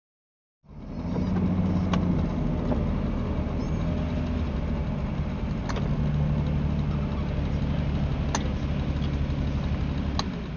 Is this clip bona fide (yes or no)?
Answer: yes